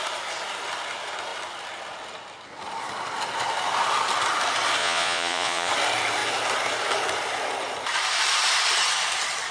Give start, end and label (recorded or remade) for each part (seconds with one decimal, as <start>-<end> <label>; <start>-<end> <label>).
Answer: 0.0-4.8 recorded; 4.8-5.7 remade; 5.7-9.5 recorded